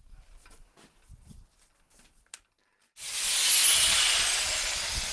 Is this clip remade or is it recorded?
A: recorded